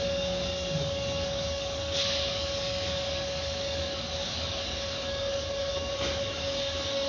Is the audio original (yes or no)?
no